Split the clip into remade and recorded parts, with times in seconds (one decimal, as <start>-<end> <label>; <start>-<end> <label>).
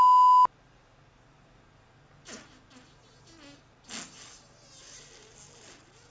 0.0-6.1 recorded